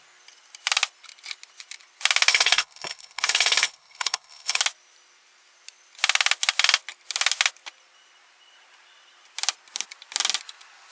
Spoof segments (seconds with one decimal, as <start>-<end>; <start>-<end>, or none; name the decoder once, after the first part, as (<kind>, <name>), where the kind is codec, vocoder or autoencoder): 2.3-4.6 (codec, HILCodec)